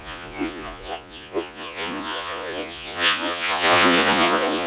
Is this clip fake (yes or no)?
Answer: yes